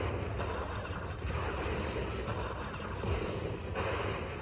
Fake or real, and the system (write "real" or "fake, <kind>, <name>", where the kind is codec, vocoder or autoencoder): real